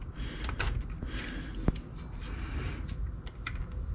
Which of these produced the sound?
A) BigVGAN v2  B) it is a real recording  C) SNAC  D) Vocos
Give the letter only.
B